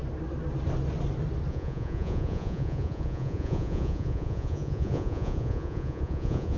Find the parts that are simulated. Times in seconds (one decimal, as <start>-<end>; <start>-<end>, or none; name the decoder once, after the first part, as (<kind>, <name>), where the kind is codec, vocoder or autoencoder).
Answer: 1.5-6.6 (vocoder, Vocos)